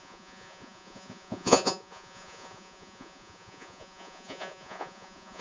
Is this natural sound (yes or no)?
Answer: no